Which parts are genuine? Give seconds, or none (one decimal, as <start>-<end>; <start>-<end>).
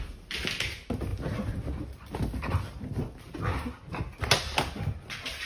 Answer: 0.0-5.5